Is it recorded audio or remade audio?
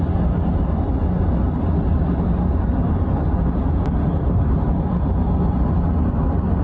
recorded